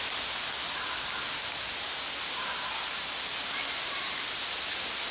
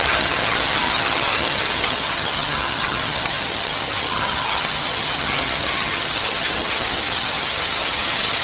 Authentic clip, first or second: first